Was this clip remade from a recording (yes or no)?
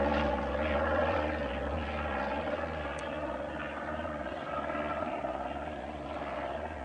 yes